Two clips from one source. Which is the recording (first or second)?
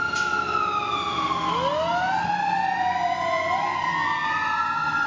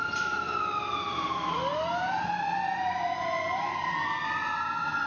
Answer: first